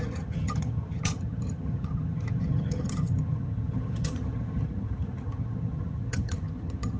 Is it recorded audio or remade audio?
remade